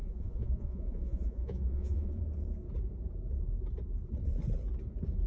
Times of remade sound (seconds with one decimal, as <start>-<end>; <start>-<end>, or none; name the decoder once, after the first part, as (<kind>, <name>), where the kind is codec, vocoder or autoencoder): 0.0-2.2 (vocoder, Vocos)